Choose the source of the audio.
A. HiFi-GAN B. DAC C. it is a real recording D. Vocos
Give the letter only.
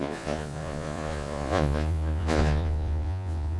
D